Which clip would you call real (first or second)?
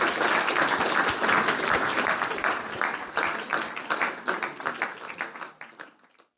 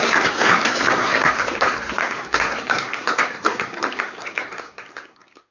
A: first